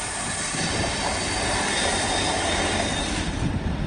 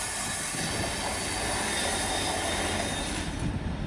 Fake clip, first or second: first